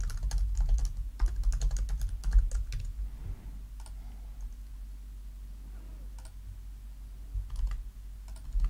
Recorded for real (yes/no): yes